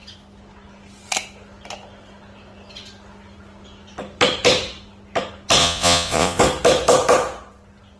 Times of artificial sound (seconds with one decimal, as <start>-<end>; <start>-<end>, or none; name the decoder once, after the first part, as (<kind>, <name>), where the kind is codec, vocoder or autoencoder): 5.6-6.4 (vocoder, Vocos)